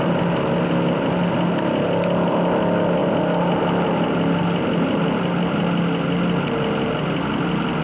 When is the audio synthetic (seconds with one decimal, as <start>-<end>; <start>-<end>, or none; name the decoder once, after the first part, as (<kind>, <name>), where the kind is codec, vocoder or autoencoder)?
none